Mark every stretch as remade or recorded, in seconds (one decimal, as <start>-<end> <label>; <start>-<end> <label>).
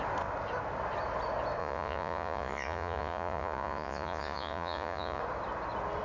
0.0-1.6 recorded; 1.6-5.2 remade; 5.2-6.0 recorded